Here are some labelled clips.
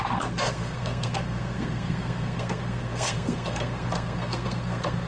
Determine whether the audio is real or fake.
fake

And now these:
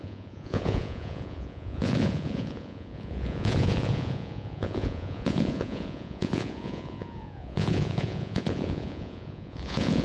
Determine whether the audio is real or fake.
fake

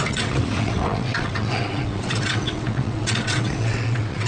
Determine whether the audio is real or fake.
fake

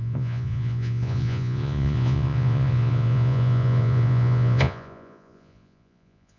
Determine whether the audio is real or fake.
fake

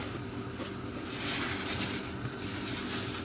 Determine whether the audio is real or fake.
real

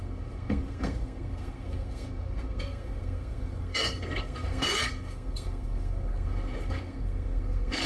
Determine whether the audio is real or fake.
fake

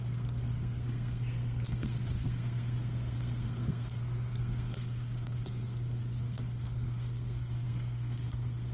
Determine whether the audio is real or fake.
fake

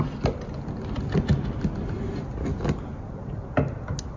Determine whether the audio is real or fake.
real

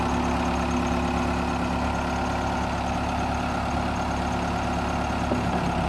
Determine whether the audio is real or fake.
real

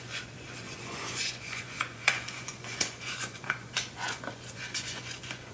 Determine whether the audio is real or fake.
fake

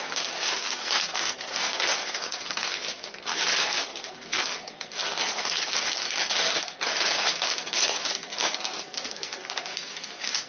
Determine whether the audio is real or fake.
fake